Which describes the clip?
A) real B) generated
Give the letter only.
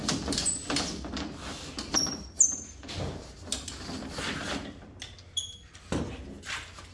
A